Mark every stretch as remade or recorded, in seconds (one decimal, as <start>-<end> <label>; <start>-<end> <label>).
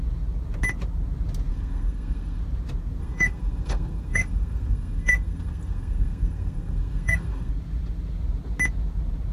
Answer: 0.0-1.5 recorded; 1.5-2.4 remade; 2.4-3.0 recorded; 3.0-7.5 remade; 7.5-9.3 recorded